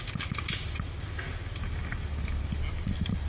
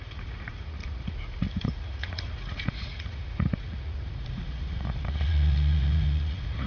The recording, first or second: first